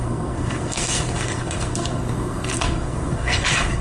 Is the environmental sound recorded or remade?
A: remade